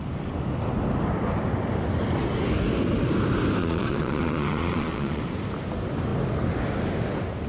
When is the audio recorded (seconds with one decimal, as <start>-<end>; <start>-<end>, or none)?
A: 0.0-3.6; 5.2-7.5